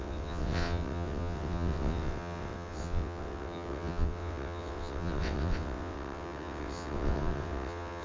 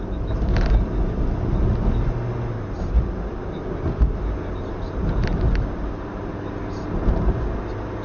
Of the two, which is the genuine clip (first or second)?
second